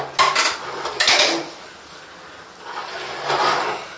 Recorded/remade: recorded